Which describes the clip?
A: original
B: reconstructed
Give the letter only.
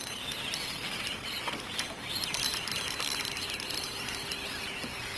A